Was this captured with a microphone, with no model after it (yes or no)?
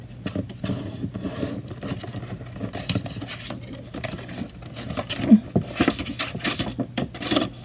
yes